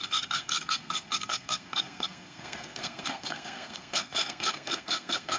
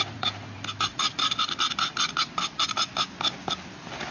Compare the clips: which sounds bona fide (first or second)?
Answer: second